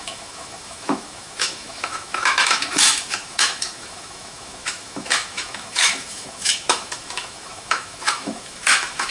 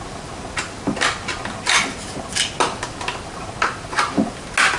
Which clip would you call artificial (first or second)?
first